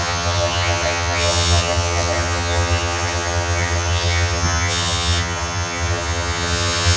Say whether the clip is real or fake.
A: fake